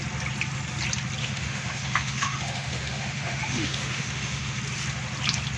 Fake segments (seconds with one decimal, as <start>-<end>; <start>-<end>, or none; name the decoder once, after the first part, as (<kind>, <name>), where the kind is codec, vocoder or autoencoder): 1.2-4.6 (autoencoder, DAC-VAE)

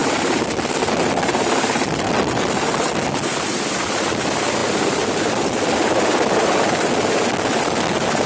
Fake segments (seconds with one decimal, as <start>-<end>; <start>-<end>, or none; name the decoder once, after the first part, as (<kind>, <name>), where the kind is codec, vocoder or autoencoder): 0.0-3.0 (vocoder, BigVGAN v2); 4.6-6.9

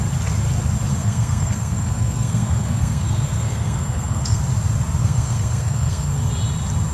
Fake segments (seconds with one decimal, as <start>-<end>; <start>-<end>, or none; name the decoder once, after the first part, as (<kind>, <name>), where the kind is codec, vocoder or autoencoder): 0.9-4.4 (codec, SNAC); 5.0-6.3